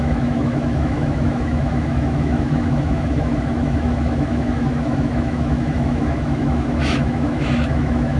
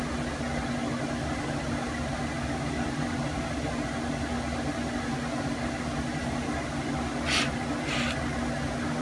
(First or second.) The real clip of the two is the second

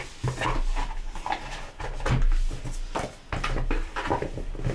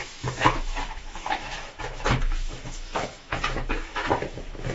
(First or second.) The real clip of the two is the first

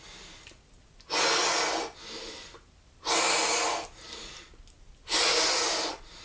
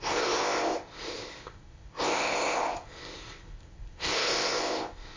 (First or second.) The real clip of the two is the first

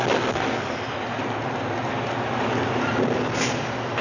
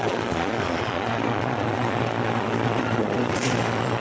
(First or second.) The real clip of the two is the first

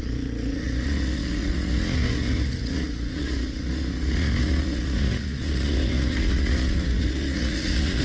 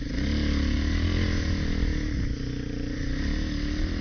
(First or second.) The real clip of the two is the second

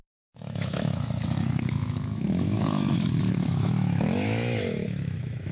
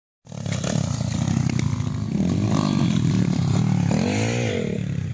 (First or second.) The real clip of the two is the second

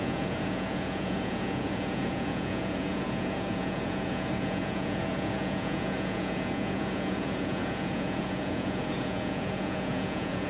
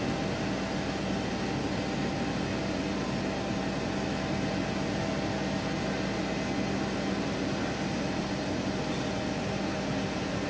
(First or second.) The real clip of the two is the second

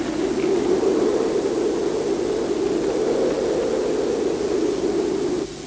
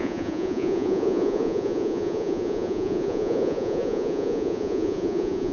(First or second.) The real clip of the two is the first